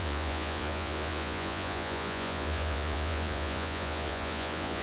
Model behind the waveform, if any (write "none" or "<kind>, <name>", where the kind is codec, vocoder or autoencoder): vocoder, Vocos